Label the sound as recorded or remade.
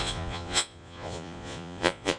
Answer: remade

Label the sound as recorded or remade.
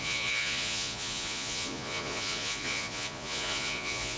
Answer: remade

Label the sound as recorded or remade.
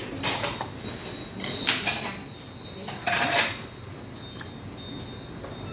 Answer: recorded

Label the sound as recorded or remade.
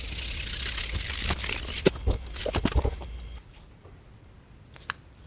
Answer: recorded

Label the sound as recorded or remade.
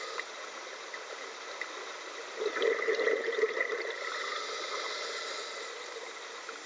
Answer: recorded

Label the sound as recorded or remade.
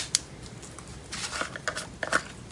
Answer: recorded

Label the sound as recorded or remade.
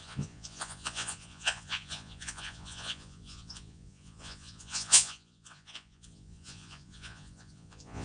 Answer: remade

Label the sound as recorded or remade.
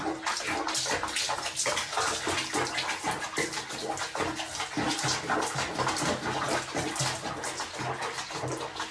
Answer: recorded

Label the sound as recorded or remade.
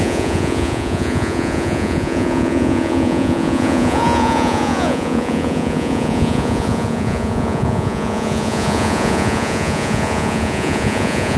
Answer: remade